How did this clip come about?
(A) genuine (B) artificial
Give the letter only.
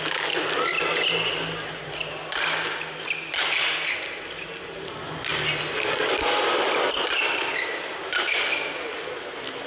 A